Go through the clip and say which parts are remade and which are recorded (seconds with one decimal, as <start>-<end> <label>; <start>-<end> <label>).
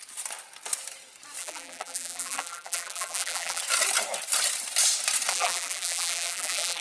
0.0-1.4 recorded; 1.4-3.6 remade; 3.6-5.3 recorded; 5.3-6.8 remade